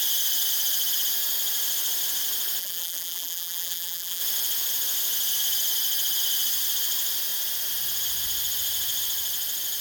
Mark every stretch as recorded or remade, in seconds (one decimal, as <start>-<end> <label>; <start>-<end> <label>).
0.0-2.6 recorded; 2.6-4.2 remade; 4.2-9.8 recorded